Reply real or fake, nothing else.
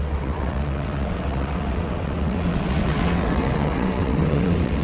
fake